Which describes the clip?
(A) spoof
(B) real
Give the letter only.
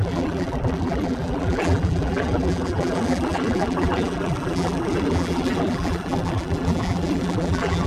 A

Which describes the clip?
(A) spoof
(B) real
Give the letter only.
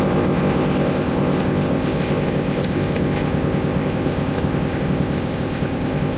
A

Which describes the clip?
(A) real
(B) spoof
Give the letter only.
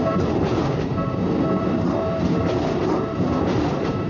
B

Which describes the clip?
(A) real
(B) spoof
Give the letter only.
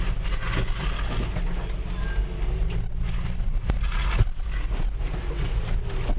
A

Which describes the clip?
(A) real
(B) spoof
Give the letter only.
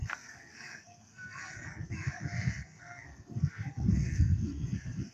B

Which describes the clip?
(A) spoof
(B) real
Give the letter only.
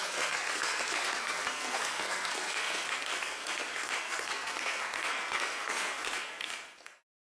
A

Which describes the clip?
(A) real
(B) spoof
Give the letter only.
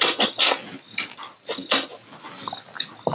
A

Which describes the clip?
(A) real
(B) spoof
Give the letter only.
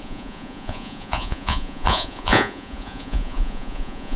B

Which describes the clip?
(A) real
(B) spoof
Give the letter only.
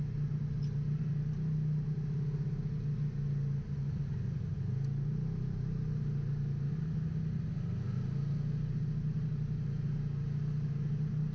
A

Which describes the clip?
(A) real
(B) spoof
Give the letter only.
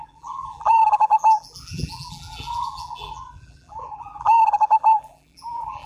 B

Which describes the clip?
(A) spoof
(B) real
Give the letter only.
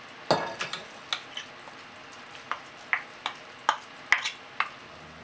B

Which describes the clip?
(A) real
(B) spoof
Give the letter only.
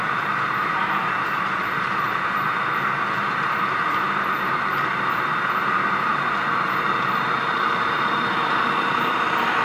B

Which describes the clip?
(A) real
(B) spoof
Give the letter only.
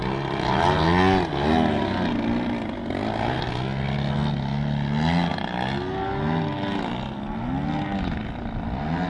A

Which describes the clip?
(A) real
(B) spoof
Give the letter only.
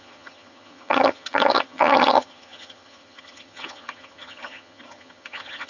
B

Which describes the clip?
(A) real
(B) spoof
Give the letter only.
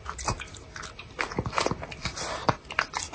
A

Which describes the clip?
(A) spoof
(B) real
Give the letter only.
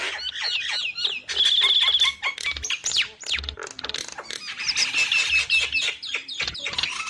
B